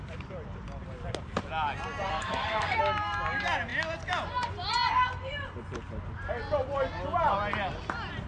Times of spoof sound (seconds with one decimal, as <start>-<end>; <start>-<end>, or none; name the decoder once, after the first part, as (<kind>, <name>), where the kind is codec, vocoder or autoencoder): 2.1-2.8 (codec, SNAC)